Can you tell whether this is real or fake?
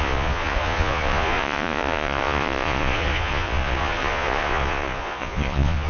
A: fake